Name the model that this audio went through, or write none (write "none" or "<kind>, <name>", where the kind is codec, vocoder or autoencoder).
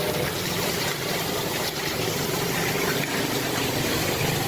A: vocoder, BigVGAN v2